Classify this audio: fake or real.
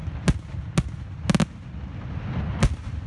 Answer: real